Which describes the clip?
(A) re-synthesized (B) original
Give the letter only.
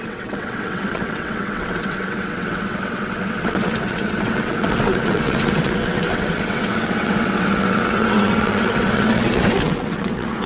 A